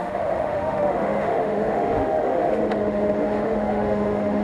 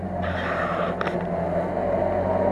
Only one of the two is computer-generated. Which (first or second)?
first